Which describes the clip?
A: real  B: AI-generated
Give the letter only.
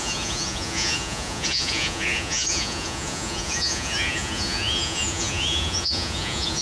B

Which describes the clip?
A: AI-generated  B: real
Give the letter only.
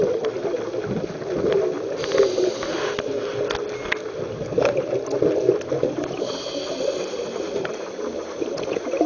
B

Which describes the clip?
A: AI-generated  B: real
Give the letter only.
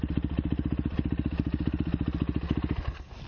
B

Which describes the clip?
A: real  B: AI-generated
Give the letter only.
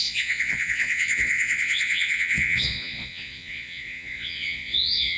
B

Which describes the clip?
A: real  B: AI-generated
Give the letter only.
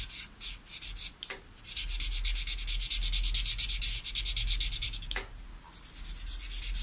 A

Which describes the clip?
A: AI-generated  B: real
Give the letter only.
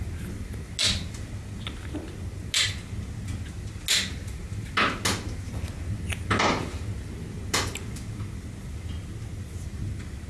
B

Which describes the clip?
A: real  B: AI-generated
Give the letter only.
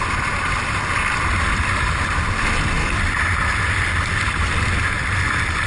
A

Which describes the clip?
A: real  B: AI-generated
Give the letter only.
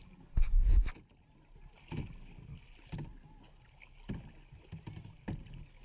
A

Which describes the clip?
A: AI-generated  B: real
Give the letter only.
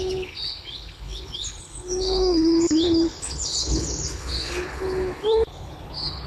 A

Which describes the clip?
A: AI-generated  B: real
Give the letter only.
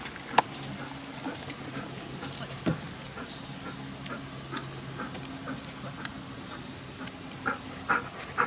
B